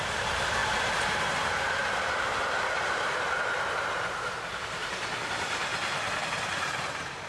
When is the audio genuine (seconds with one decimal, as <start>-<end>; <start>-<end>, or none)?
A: 5.7-6.5

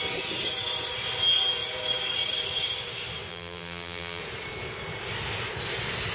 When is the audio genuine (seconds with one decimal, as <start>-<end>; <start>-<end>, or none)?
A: 0.0-3.3; 4.2-6.1

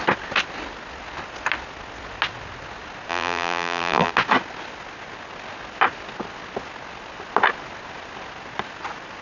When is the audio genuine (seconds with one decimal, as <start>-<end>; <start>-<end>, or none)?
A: 0.0-3.1; 4.1-9.2

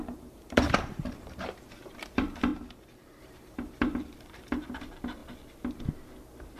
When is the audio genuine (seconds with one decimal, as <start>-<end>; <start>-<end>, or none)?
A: 5.2-6.6

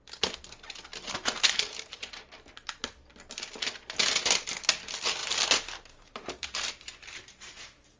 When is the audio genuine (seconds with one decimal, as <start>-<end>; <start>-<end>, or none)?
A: 0.0-0.9; 2.3-5.2

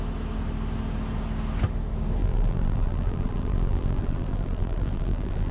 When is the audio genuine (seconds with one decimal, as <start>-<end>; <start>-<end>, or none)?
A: 0.0-2.2